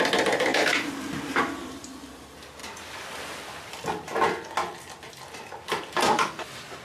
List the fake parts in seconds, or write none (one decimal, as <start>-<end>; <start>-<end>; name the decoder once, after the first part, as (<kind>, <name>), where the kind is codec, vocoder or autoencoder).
0.0-2.6 (vocoder, BigVGAN v2); 5.7-6.8